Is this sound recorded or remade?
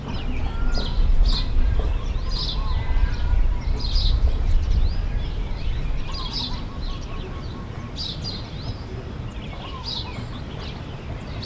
recorded